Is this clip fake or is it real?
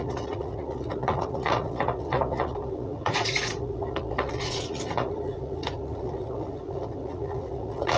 fake